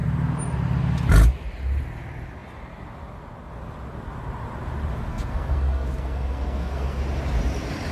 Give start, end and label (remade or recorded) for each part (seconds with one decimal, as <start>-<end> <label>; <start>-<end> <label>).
0.0-5.1 recorded; 5.1-7.0 remade; 7.0-7.9 recorded